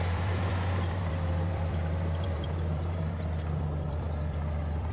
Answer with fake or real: fake